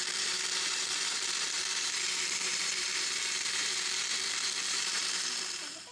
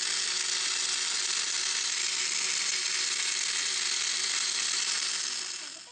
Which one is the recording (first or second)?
second